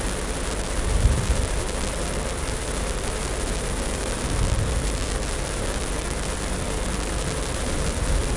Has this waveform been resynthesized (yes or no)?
yes